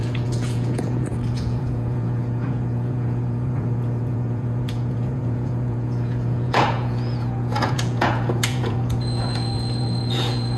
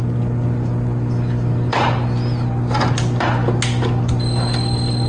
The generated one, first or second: first